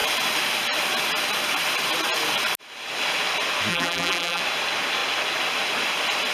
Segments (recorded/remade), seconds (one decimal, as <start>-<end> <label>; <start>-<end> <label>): 0.0-3.7 recorded; 3.7-4.4 remade; 4.4-6.3 recorded